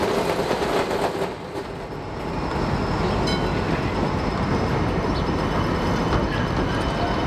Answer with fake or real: real